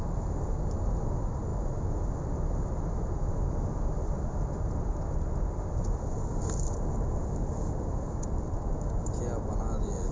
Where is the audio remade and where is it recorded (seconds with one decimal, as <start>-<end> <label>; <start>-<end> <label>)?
0.0-3.9 recorded; 3.9-8.7 remade; 8.7-10.1 recorded